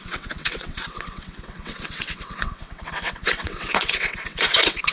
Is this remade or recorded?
remade